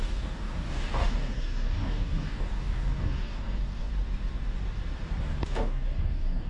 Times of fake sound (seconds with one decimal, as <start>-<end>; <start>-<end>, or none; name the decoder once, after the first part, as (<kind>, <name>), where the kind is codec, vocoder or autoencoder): 0.0-3.9 (codec, DAC); 5.2-6.5